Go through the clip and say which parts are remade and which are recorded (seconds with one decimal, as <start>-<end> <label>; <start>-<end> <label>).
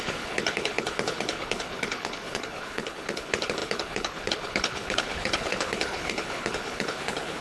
0.0-7.4 remade